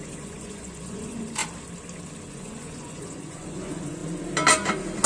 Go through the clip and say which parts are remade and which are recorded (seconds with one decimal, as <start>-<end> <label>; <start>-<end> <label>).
0.0-1.4 remade; 1.4-2.3 recorded; 2.3-4.0 remade; 4.0-5.1 recorded